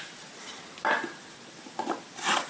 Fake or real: real